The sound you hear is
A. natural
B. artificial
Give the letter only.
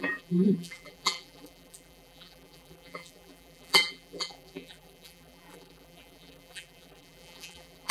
B